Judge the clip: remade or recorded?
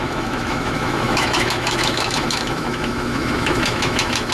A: remade